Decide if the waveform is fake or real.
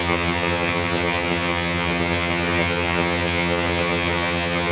fake